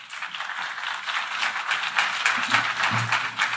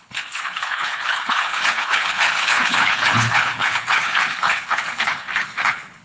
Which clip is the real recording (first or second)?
first